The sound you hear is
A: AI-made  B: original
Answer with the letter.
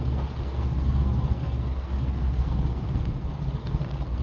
A